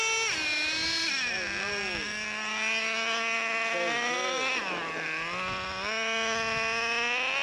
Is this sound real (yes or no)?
yes